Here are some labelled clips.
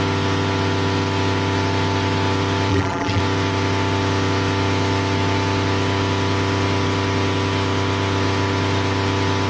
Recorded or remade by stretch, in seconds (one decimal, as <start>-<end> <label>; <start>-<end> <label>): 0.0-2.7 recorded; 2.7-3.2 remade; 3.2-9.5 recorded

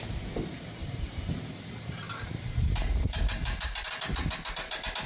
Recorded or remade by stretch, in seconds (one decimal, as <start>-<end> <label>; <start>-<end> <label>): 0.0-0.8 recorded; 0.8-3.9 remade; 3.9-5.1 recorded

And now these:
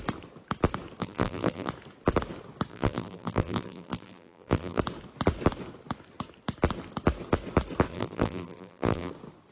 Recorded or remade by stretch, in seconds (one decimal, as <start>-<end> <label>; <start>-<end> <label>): 0.0-1.0 recorded; 1.0-1.7 remade; 1.7-2.7 recorded; 2.7-4.8 remade; 4.8-7.9 recorded; 7.9-9.1 remade; 9.1-9.5 recorded